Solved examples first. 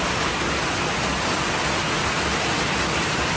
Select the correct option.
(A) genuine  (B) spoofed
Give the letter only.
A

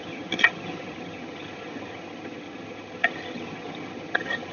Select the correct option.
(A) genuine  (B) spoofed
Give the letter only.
B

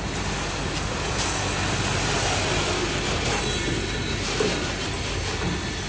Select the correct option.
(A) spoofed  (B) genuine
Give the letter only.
B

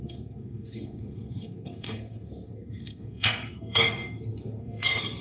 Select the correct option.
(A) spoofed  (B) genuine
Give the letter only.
A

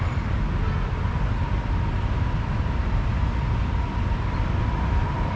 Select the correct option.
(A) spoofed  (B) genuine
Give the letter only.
B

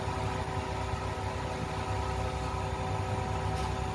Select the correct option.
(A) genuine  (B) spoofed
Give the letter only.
A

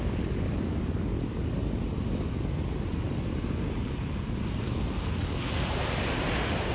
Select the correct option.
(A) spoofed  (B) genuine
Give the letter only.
B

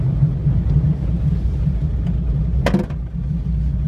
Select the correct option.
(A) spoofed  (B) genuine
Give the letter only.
B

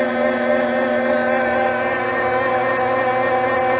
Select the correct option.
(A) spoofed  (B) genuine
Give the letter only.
B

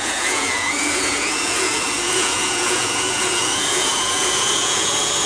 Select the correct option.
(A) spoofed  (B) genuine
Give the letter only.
A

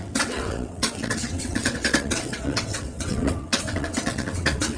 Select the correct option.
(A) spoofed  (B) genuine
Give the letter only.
A